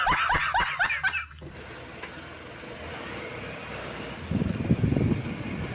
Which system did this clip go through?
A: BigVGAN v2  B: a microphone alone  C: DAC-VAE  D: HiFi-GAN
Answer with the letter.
B